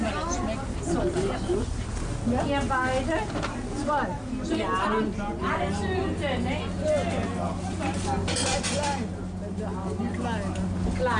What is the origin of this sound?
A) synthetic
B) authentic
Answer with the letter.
B